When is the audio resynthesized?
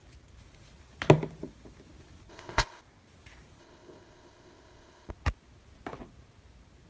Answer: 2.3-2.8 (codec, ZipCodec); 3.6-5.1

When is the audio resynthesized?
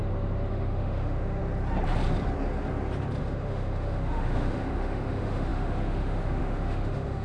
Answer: 0.5-1.4 (autoencoder, DAC-VAE); 3.2-7.2